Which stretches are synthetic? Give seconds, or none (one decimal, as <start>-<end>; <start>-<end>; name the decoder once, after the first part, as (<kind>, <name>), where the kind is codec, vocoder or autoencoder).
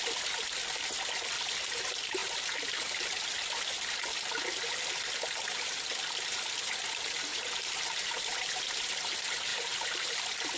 7.3-8.6 (vocoder, BigVGAN v2); 9.5-10.2